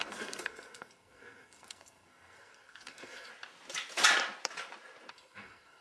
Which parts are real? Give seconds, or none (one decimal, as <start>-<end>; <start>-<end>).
3.3-5.1